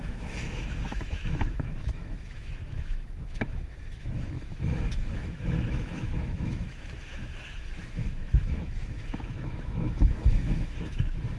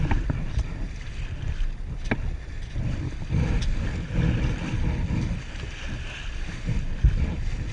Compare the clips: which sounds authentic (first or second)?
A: second